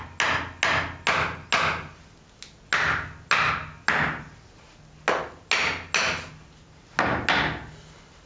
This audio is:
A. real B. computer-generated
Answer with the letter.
A